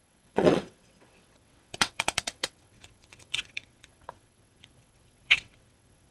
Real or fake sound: fake